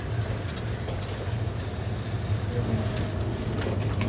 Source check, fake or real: real